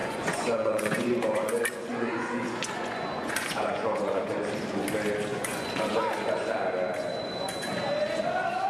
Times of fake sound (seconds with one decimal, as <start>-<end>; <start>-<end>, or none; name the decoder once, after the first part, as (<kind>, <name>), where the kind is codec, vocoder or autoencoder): 0.0-4.4 (vocoder, Vocos); 5.3-6.5; 7.0-7.7